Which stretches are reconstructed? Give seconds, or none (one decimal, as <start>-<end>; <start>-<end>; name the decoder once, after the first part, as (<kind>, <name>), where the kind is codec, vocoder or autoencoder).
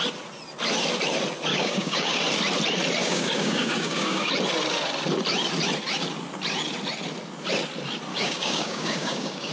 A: 1.5-2.2 (codec, DAC); 3.0-4.3; 8.1-9.5